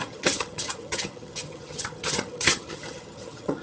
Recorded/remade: remade